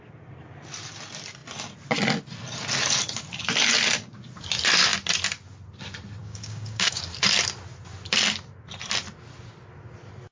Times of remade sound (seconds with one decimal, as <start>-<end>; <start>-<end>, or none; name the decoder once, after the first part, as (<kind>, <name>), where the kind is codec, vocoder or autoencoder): 6.2-7.0 (codec, DAC)